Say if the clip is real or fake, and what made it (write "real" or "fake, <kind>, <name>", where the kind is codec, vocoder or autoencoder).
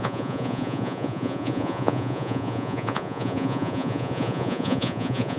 fake, vocoder, Vocos